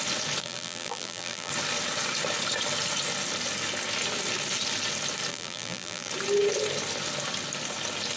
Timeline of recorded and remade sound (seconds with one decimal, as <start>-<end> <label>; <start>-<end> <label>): 0.0-0.4 recorded; 0.4-1.5 remade; 1.5-5.3 recorded; 5.3-6.1 remade; 6.1-8.2 recorded